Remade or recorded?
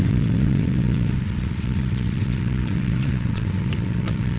remade